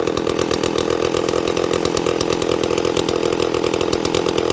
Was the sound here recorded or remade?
recorded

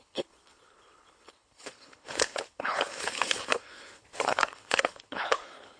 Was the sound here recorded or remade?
remade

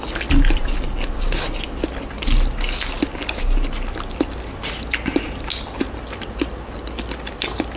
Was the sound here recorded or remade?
recorded